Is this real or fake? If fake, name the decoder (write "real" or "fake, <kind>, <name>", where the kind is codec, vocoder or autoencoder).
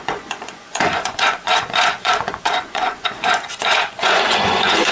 fake, vocoder, Vocos